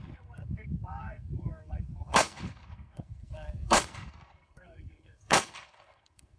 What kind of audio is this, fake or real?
fake